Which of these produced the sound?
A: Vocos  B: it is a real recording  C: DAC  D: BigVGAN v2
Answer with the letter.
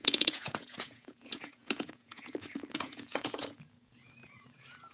A